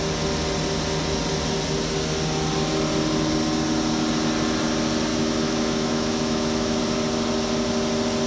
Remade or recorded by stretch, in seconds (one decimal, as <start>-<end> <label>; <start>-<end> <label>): 0.0-5.1 recorded; 5.1-6.8 remade; 6.8-8.3 recorded